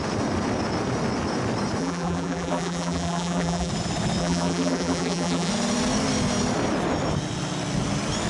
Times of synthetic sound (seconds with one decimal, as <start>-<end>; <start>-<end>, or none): 1.8-3.7; 4.2-5.5